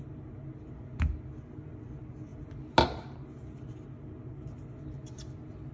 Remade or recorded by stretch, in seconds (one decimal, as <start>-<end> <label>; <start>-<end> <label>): 0.0-5.7 recorded